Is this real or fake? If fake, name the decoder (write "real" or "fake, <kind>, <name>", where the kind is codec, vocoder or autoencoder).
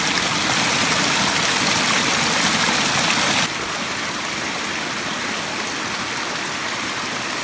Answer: real